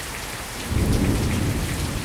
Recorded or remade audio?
recorded